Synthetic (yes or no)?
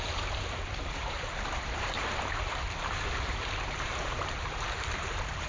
yes